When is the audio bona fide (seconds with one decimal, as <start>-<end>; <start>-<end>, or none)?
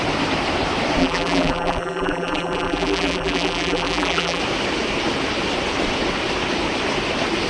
0.0-1.0; 4.4-7.5